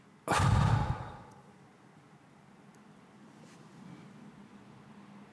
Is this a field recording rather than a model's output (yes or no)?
yes